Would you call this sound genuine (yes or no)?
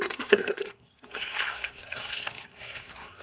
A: no